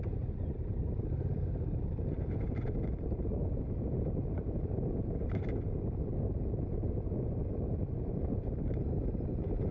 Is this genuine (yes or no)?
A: no